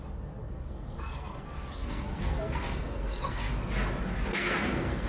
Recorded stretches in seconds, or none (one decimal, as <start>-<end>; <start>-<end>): 0.0-0.4; 3.5-4.3